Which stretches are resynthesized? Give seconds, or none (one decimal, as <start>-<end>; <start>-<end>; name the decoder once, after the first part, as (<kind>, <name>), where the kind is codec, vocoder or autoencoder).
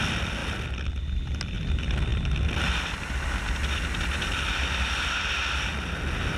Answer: none